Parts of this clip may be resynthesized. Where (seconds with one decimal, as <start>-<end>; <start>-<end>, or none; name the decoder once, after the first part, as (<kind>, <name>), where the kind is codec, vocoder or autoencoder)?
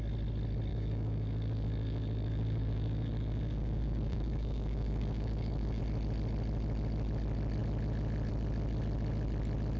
0.7-5.8 (codec, DAC)